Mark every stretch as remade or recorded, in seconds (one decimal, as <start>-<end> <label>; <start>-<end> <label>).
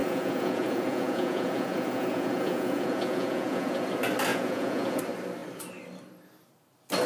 0.0-3.9 remade; 3.9-4.3 recorded; 4.3-5.0 remade; 5.0-7.1 recorded